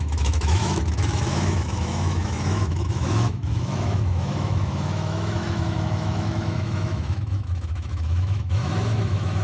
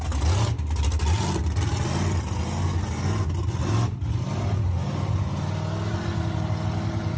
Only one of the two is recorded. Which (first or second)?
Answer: second